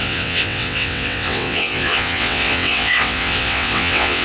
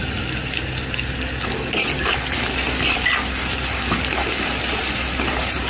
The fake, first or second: first